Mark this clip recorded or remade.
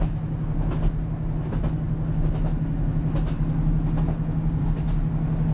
recorded